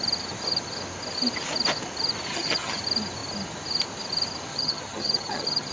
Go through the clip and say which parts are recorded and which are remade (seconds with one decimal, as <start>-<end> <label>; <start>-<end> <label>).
0.0-2.3 recorded; 2.3-2.8 remade; 2.8-4.5 recorded; 4.5-5.7 remade